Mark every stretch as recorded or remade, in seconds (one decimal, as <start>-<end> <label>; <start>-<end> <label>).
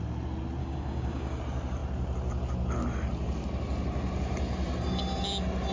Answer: 0.0-0.6 recorded; 0.6-1.4 remade; 1.4-5.7 recorded